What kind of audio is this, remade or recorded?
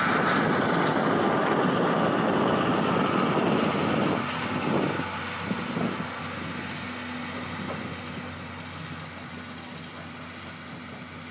recorded